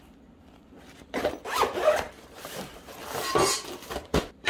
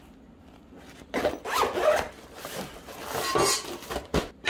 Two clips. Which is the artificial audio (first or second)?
first